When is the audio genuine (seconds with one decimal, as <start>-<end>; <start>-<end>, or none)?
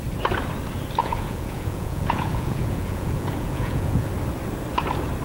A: 0.0-1.0; 4.1-5.2